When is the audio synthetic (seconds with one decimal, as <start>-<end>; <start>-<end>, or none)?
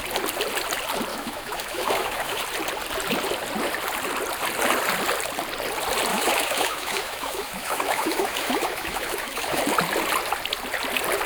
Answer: 1.1-2.4; 6.1-9.6